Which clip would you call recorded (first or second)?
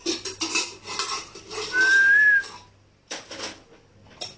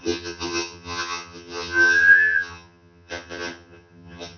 first